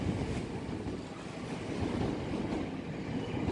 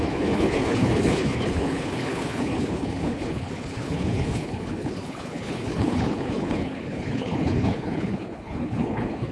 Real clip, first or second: first